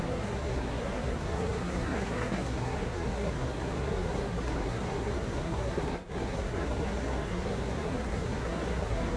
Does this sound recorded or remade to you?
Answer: remade